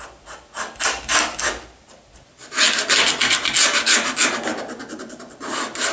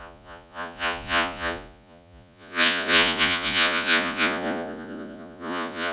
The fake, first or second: second